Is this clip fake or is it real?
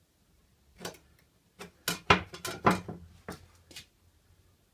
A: real